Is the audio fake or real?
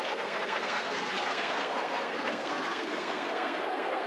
fake